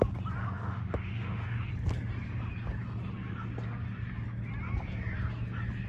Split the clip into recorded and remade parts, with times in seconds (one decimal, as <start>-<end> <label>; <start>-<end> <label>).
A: 0.0-0.4 recorded; 0.4-1.7 remade; 1.7-5.9 recorded